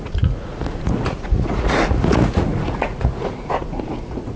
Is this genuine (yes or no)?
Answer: no